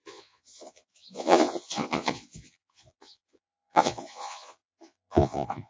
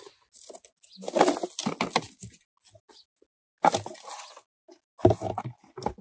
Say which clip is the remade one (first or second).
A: first